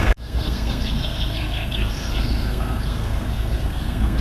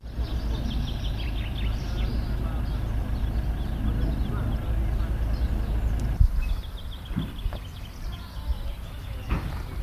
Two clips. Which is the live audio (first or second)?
second